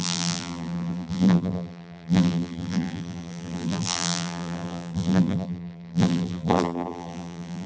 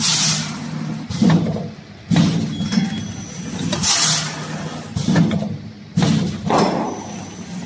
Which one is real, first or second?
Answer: second